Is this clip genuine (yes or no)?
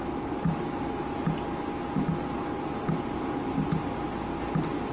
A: yes